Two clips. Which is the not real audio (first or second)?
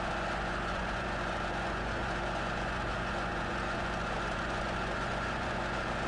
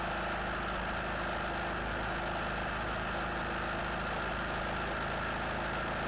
first